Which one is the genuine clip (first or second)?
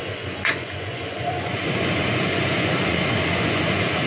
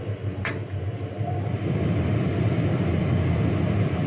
second